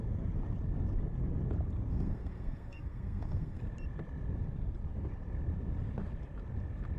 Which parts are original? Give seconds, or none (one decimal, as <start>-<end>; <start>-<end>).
0.0-1.9; 3.6-7.0